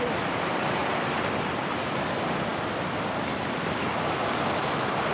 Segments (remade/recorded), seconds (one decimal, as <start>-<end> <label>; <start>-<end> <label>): 0.0-0.8 recorded; 0.8-1.5 remade; 1.5-5.1 recorded